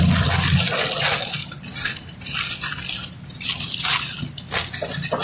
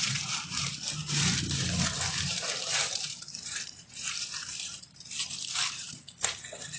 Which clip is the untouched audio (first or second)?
first